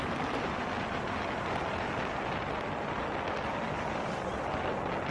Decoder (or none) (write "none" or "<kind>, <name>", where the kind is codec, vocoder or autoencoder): vocoder, BigVGAN v2